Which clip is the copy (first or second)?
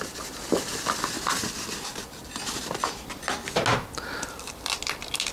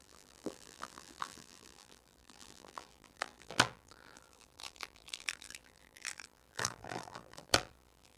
second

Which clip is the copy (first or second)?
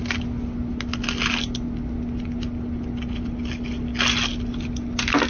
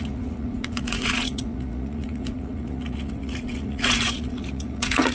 second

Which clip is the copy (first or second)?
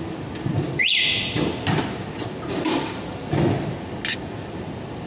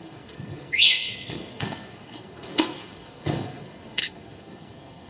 second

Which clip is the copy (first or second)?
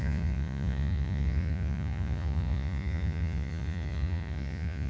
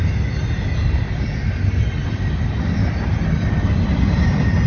first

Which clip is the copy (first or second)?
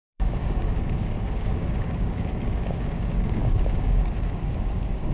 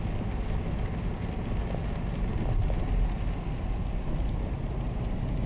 first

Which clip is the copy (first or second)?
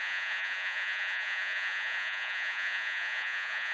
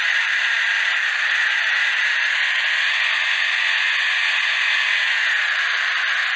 first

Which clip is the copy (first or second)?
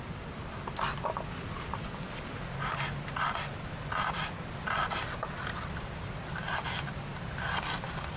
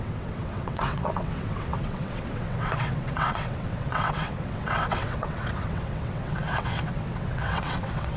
second